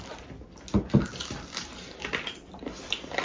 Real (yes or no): yes